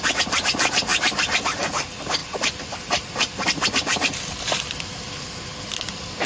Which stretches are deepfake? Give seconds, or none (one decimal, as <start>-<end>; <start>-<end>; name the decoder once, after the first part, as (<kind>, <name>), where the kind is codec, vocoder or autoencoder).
0.9-1.6 (vocoder, BigVGAN v2); 2.2-5.0